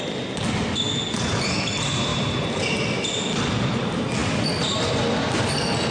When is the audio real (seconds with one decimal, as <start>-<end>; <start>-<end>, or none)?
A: 0.0-5.9